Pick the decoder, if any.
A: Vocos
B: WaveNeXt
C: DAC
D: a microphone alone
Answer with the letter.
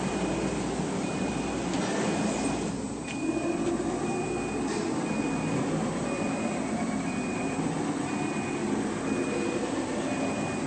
D